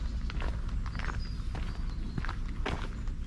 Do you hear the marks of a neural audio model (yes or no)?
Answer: no